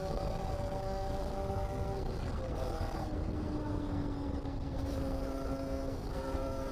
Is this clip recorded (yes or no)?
no